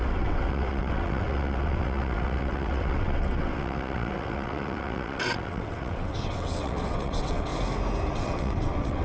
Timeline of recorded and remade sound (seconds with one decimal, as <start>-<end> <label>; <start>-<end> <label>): 0.0-7.5 remade; 7.5-8.1 recorded; 8.1-9.0 remade